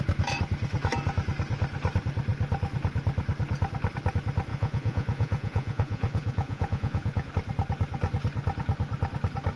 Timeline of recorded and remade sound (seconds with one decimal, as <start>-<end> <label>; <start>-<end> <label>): 0.0-4.5 recorded; 4.5-7.3 remade; 7.3-9.6 recorded